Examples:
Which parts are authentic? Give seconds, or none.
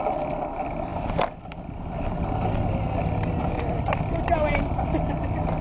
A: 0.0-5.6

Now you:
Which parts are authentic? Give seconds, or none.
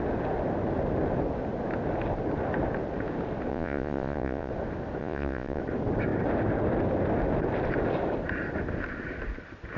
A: 0.0-3.5; 4.5-5.0; 5.6-9.8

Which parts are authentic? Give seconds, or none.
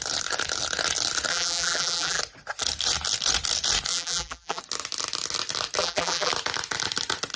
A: 0.0-1.3; 2.2-3.9; 4.6-5.8; 6.3-7.4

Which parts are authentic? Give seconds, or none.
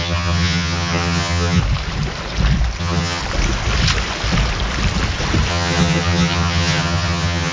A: 1.6-2.8; 3.2-5.5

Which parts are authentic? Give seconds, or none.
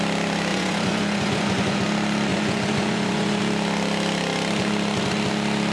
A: 0.0-0.5; 1.8-2.3; 3.4-5.7